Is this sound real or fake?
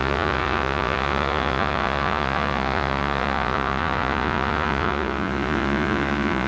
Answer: fake